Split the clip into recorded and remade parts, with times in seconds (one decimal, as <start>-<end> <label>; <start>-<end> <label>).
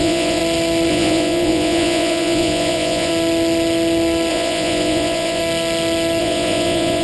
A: 0.0-0.4 remade; 0.4-0.9 recorded; 0.9-3.1 remade; 3.1-4.3 recorded; 4.3-5.4 remade; 5.4-6.2 recorded; 6.2-7.0 remade